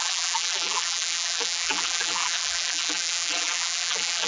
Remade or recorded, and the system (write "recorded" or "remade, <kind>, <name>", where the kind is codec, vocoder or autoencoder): remade, vocoder, BigVGAN v2